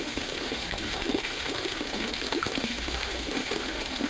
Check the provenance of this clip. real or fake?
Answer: fake